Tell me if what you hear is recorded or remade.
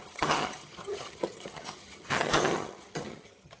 remade